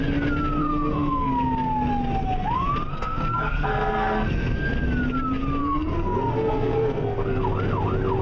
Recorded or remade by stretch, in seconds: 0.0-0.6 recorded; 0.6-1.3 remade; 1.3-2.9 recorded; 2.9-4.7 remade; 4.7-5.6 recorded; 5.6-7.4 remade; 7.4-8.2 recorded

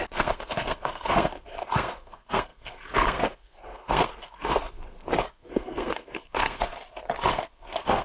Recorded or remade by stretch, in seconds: 0.0-6.7 remade; 6.7-7.3 recorded; 7.3-8.0 remade

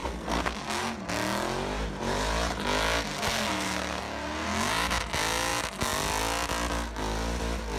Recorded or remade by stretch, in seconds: 0.0-0.6 remade; 0.6-3.1 recorded; 3.1-4.0 remade; 4.0-7.8 recorded